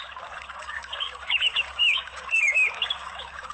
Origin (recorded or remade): remade